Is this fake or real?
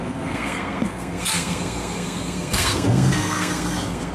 fake